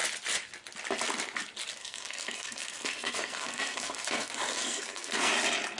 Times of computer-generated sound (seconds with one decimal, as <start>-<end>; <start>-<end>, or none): 1.8-5.3